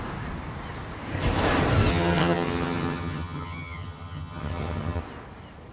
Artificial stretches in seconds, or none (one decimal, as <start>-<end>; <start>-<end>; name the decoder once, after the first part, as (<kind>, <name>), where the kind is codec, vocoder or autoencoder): 1.9-5.0 (vocoder, HiFi-GAN)

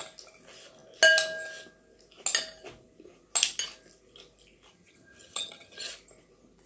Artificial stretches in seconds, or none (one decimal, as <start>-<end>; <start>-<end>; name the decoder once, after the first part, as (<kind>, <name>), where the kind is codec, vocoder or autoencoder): 4.7-5.9 (vocoder, HiFi-GAN)

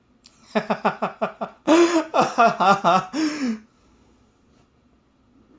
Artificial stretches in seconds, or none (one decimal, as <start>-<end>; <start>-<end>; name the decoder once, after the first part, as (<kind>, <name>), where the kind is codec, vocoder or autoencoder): none

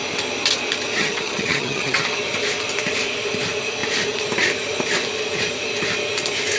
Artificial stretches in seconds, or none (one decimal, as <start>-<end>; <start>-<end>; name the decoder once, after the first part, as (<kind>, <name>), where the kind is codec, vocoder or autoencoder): 1.0-2.0 (vocoder, HiFi-GAN)

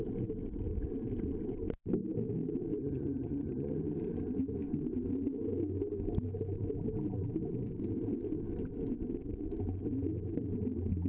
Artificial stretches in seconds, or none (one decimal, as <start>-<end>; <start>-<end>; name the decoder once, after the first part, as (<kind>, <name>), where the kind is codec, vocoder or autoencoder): 2.8-3.7 (vocoder, HiFi-GAN)

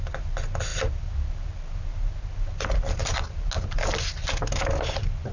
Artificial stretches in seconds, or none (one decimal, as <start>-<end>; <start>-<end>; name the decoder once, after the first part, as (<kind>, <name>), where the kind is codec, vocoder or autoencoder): none

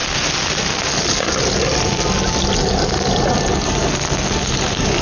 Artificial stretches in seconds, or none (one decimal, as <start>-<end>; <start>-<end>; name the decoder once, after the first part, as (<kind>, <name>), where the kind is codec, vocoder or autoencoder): none

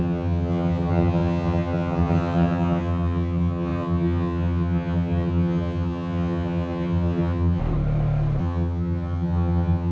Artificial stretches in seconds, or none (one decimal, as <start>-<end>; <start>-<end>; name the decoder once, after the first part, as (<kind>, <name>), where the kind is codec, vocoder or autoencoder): 0.0-7.6 (vocoder, HiFi-GAN); 8.4-9.9